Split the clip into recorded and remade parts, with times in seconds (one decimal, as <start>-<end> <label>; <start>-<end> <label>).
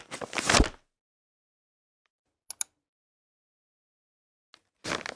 0.0-5.2 recorded